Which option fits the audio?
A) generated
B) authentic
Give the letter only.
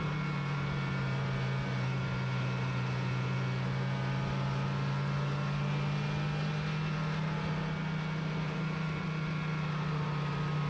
B